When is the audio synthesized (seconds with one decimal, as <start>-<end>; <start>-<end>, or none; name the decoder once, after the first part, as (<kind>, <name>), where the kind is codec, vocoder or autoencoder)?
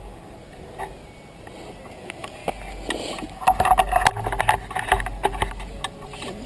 none